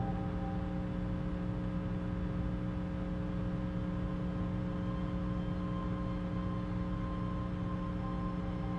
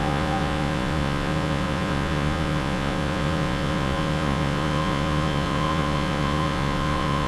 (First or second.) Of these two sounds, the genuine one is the first